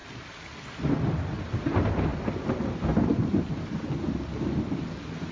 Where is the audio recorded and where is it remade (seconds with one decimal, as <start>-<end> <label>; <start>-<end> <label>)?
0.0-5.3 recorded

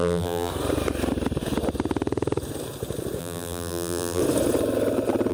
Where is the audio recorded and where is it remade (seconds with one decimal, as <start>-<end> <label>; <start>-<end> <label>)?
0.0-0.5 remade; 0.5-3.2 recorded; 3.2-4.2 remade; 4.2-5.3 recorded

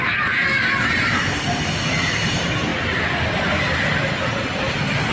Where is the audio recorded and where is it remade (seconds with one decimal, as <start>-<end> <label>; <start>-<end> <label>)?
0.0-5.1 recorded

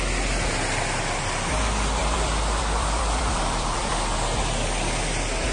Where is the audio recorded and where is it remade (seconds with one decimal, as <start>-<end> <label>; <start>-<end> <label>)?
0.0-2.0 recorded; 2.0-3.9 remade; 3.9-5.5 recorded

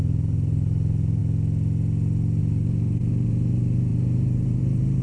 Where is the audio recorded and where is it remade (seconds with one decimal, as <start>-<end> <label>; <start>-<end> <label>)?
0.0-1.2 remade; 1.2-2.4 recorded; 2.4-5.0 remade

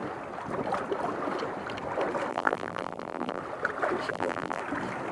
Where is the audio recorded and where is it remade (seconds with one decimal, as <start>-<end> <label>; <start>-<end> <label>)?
0.0-2.3 recorded; 2.3-3.4 remade; 3.4-4.1 recorded; 4.1-4.6 remade; 4.6-5.1 recorded

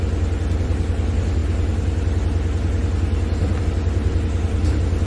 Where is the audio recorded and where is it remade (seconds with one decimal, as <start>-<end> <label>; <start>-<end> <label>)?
0.0-5.1 recorded

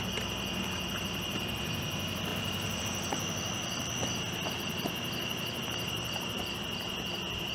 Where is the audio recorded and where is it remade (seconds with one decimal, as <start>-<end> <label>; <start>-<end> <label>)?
0.0-2.3 recorded; 2.3-2.8 remade; 2.8-7.5 recorded